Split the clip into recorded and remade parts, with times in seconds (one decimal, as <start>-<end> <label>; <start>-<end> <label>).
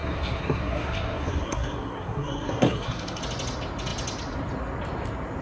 0.0-3.2 remade; 3.2-5.4 recorded